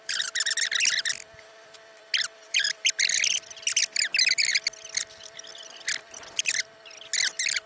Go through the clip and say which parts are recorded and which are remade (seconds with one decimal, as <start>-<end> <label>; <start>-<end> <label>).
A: 0.0-7.7 recorded